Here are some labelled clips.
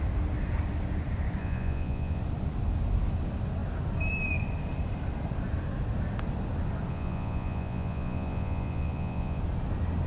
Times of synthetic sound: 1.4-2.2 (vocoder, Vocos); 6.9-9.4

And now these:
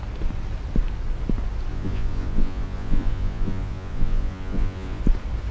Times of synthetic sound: 1.7-5.0 (vocoder, Vocos)